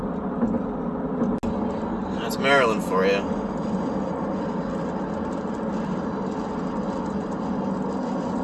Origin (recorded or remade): recorded